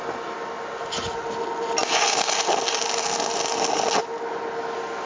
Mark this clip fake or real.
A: real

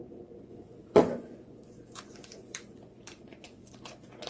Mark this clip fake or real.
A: fake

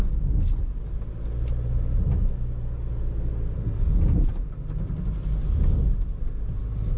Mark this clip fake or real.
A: real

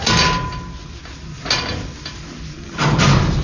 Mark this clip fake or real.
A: real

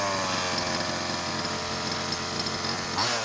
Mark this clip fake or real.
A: real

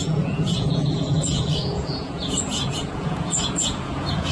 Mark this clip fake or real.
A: fake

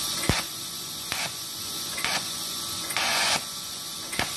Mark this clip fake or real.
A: fake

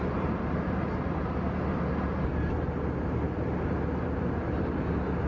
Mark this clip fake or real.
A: real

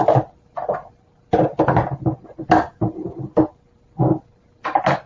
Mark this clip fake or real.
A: real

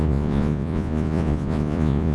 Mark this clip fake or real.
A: fake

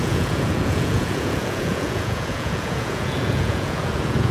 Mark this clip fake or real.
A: fake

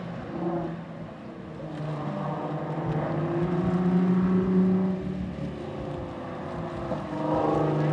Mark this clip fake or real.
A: real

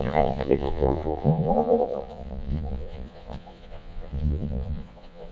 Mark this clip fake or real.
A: fake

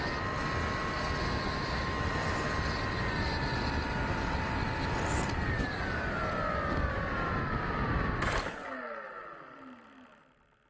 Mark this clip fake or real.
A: real